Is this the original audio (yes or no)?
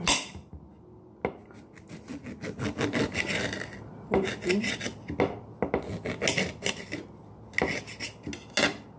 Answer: yes